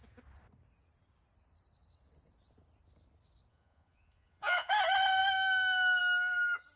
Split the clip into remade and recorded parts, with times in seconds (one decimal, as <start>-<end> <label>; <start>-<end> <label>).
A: 0.0-3.5 recorded; 3.5-4.7 remade; 4.7-6.8 recorded